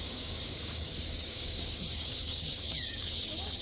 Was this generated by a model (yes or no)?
yes